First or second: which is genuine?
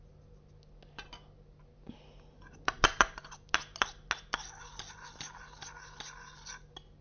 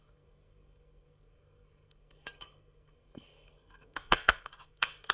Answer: first